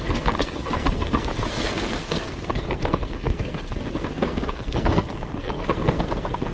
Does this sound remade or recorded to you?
remade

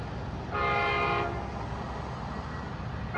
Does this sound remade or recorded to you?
recorded